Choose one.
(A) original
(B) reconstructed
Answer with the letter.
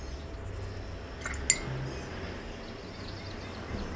A